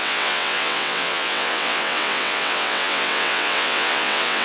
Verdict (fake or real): fake